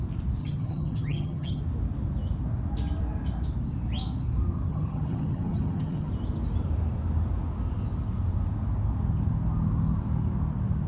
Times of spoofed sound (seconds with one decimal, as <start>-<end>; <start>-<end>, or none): 0.4-1.6; 4.7-6.1